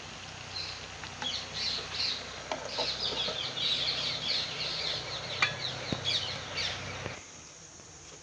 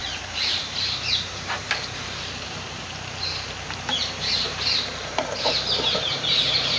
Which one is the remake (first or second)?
second